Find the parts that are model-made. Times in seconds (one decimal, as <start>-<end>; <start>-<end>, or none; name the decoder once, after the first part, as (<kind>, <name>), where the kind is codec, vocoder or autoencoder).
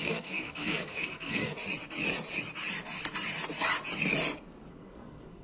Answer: 0.0-1.5 (codec, SNAC); 4.7-5.4